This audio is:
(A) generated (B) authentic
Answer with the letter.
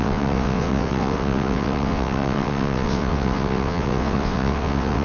A